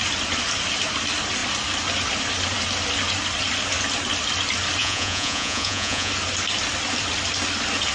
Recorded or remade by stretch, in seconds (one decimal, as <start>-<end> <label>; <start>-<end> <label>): 0.0-4.8 recorded; 4.8-6.1 remade; 6.1-7.9 recorded